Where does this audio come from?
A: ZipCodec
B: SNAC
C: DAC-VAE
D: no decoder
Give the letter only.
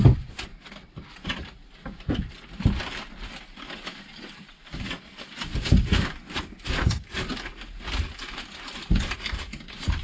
D